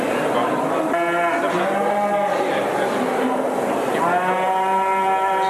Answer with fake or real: real